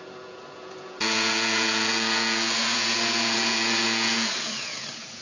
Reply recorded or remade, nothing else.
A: remade